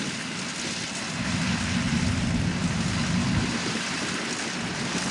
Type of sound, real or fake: real